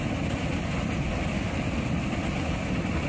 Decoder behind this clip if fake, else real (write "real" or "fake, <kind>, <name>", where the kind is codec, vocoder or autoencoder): real